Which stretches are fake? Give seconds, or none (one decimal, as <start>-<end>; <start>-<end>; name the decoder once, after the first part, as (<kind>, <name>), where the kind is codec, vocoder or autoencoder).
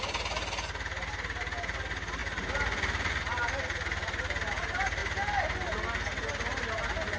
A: none